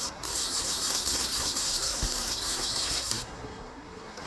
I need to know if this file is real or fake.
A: fake